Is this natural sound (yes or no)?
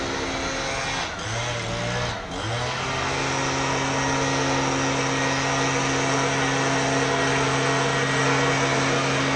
yes